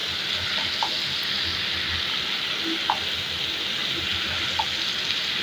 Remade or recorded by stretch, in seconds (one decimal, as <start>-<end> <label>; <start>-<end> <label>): 0.0-5.4 recorded